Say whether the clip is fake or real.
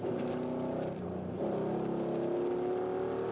real